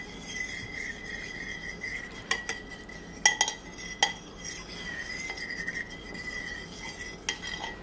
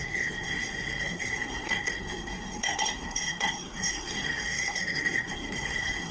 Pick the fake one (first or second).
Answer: second